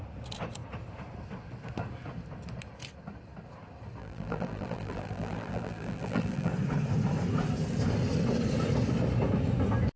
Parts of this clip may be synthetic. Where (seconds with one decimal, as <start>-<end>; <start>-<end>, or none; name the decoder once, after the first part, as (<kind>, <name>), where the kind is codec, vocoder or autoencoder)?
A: 4.0-6.5 (vocoder, BigVGAN v2)